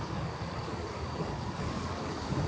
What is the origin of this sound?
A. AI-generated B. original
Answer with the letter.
A